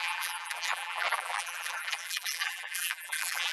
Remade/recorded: remade